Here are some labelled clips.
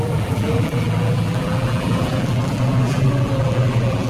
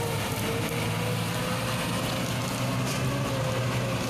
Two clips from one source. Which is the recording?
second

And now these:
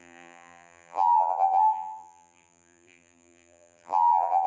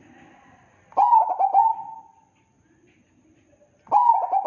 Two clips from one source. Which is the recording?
second